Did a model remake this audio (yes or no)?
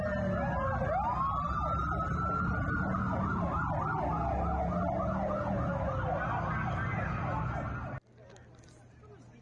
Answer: no